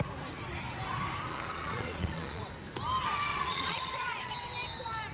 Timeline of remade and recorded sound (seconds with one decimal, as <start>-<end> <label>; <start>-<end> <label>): 0.0-1.3 recorded; 1.3-2.4 remade; 2.4-3.3 recorded; 3.3-4.3 remade; 4.3-5.1 recorded

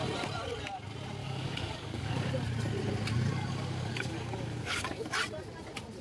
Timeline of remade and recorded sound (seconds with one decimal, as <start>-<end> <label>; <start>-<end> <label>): 0.0-1.2 recorded; 1.2-2.3 remade; 2.3-3.3 recorded; 3.3-5.0 remade; 5.0-6.0 recorded